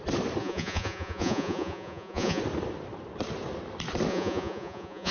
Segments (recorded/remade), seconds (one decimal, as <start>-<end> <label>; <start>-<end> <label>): 0.0-0.4 recorded; 0.4-2.4 remade; 2.4-4.1 recorded; 4.1-5.1 remade